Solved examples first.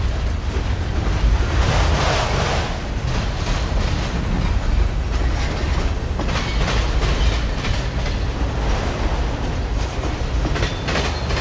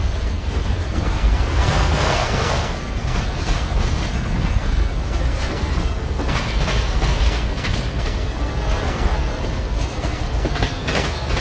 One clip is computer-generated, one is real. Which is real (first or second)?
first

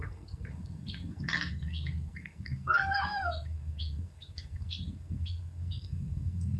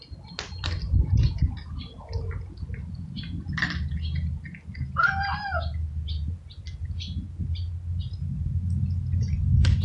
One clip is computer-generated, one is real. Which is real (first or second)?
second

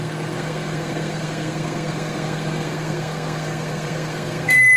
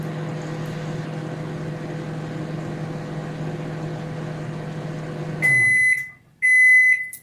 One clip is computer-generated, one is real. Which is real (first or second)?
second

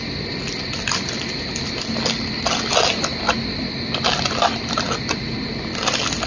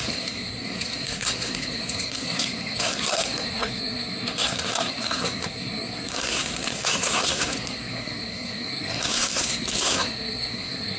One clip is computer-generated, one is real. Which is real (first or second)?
first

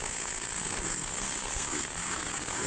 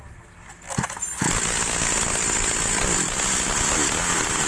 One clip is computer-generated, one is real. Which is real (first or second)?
second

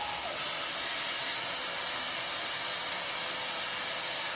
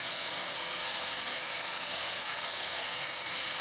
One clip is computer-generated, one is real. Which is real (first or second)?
first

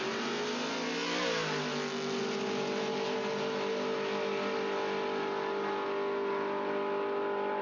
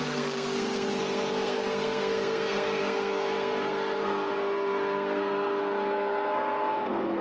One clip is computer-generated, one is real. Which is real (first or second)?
first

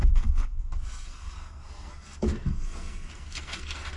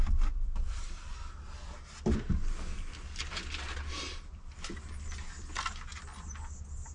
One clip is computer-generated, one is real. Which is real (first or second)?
second